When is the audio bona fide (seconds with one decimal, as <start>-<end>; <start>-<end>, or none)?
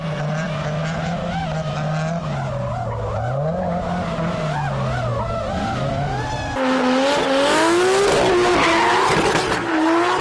0.0-10.2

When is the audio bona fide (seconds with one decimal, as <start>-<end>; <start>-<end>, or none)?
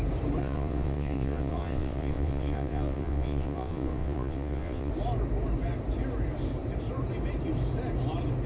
0.0-0.4; 4.9-8.5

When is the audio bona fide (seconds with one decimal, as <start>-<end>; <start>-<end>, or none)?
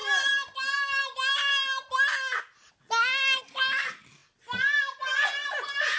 0.0-6.0